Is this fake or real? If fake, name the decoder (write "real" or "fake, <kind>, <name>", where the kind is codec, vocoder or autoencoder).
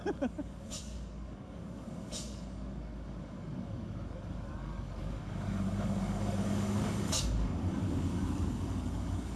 fake, codec, DAC